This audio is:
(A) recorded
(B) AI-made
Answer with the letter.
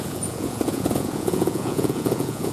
B